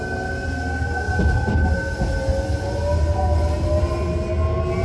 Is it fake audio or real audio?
real